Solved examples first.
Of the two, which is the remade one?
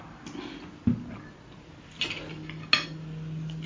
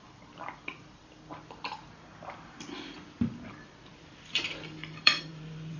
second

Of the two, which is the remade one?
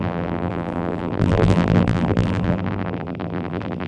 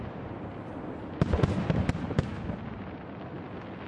first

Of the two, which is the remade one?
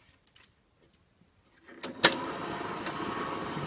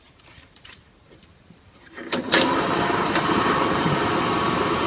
second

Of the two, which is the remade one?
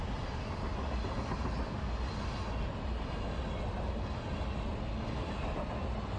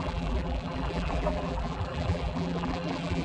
second